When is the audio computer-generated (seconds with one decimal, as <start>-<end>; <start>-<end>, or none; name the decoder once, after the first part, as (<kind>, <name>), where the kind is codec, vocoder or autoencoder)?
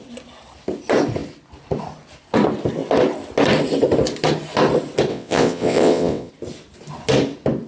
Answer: 5.1-6.3 (vocoder, WaveNeXt)